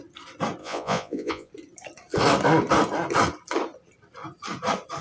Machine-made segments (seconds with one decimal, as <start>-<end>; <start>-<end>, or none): 0.6-1.5